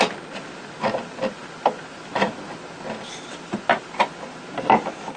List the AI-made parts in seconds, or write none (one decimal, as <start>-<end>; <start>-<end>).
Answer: none